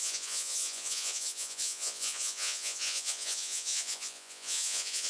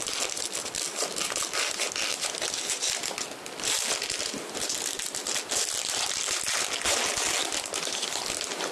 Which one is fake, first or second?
first